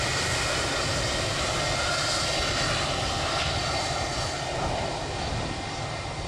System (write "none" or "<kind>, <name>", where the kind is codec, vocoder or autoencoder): none